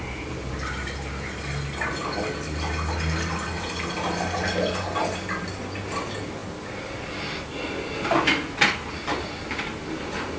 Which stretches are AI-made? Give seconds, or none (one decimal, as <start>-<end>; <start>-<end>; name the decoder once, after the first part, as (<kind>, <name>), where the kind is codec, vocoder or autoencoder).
none